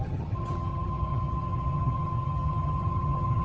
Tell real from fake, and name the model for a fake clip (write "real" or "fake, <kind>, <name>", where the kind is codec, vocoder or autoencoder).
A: fake, vocoder, HiFi-GAN